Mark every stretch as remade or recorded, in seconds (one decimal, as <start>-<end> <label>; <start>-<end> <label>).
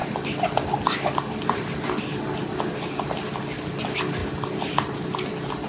0.0-5.7 recorded